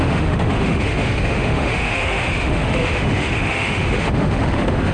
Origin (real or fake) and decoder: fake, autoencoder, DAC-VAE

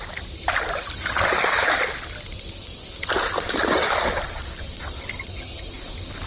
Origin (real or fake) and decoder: real